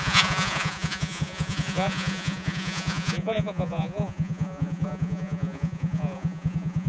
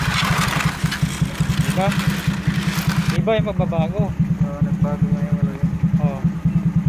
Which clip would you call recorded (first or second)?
second